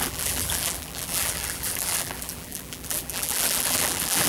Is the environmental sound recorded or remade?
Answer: remade